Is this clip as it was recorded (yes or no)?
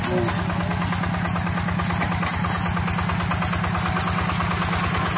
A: yes